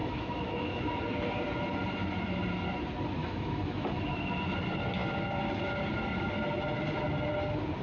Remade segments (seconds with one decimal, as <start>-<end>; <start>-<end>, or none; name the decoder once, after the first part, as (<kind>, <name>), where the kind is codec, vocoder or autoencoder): 0.0-0.9 (autoencoder, DAC-VAE); 3.2-4.3